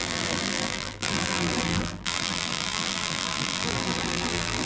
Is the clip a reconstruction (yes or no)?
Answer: yes